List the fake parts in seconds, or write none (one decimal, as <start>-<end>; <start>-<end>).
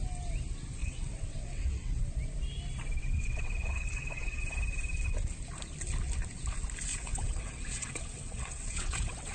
0.8-2.0; 3.0-4.4; 6.9-9.3